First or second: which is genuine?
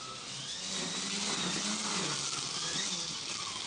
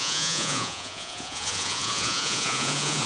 first